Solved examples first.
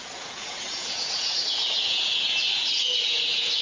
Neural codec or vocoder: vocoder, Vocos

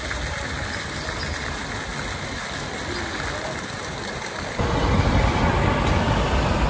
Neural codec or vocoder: none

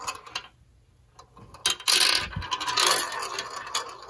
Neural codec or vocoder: none